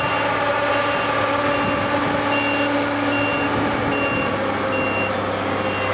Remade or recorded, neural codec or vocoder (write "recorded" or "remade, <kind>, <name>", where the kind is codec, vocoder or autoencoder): recorded